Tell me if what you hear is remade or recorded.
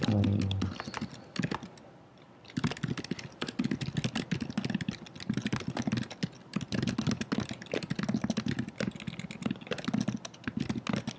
recorded